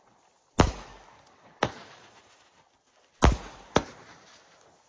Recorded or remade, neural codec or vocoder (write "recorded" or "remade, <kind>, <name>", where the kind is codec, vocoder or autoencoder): recorded